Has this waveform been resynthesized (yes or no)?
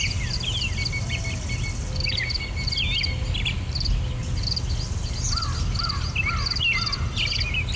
no